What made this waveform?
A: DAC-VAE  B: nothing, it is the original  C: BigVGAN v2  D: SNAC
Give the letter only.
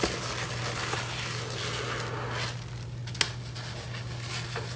B